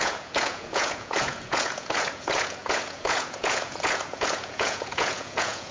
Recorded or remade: remade